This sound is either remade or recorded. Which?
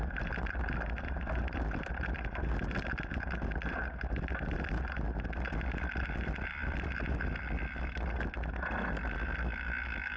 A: recorded